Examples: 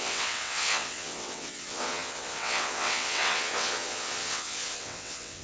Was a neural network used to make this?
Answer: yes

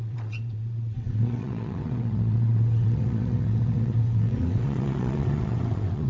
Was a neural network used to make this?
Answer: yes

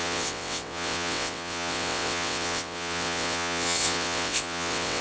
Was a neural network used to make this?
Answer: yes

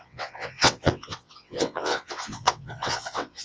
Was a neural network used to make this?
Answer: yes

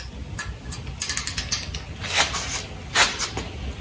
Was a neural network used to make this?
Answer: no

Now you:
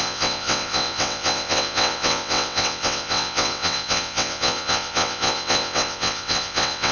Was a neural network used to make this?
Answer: yes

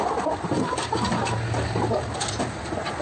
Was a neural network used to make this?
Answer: no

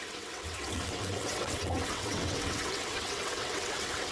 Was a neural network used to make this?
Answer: yes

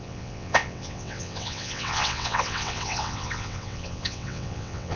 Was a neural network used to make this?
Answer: yes